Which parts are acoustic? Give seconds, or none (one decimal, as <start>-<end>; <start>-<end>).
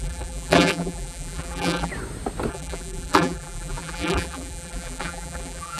1.9-2.5